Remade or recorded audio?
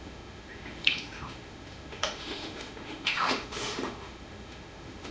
remade